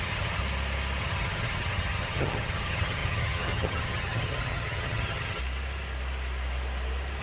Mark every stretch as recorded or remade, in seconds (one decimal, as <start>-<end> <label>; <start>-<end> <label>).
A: 0.0-0.4 remade; 0.4-1.0 recorded; 1.0-5.4 remade; 5.4-7.2 recorded